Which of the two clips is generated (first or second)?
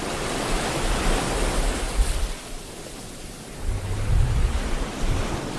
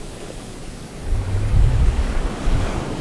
second